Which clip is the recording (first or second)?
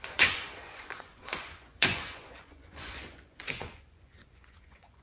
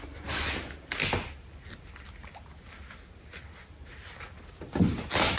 second